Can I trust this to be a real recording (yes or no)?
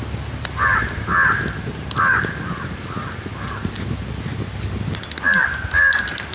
yes